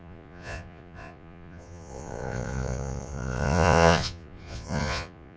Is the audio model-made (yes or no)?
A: yes